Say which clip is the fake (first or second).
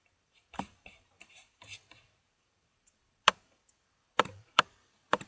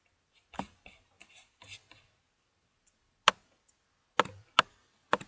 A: first